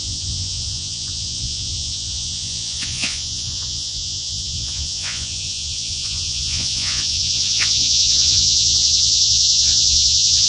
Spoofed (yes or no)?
yes